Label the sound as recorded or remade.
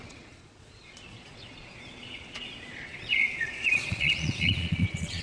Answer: remade